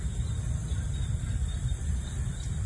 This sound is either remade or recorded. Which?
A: recorded